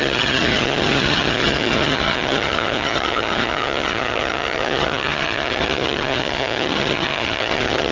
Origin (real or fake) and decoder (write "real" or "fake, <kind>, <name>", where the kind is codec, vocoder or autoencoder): fake, vocoder, HiFi-GAN